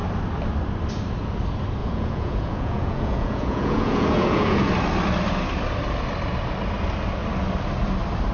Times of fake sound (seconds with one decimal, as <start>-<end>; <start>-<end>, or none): 1.8-4.7